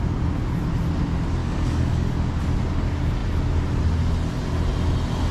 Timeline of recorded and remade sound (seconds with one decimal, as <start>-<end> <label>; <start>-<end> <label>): 0.0-1.4 recorded; 1.4-2.2 remade; 2.2-5.3 recorded